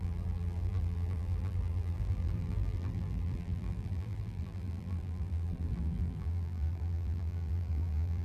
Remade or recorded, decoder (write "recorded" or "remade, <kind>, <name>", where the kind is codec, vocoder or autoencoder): remade, vocoder, BigVGAN v2